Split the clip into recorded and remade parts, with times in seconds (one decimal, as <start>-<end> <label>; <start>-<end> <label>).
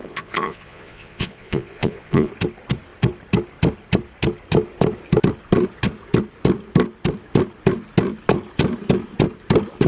0.0-2.3 remade; 2.3-9.9 recorded